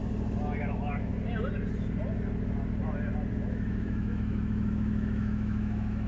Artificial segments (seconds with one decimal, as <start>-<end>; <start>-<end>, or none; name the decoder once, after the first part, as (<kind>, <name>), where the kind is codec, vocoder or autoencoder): 0.6-1.1 (autoencoder, DAC-VAE); 3.3-6.1